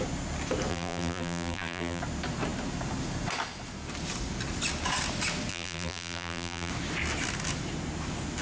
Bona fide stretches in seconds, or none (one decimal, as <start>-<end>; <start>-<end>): 0.0-0.7; 2.0-5.5; 6.7-8.4